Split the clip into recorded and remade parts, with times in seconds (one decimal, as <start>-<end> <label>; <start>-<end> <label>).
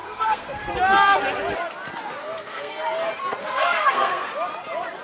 0.0-0.7 remade; 0.7-2.2 recorded; 2.2-2.8 remade; 2.8-3.4 recorded; 3.4-4.3 remade; 4.3-5.0 recorded